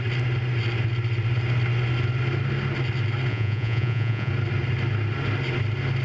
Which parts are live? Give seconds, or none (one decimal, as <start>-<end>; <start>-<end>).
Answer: 0.0-3.3; 4.3-6.0